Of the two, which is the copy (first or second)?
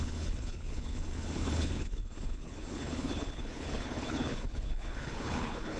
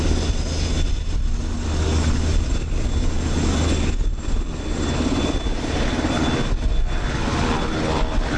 first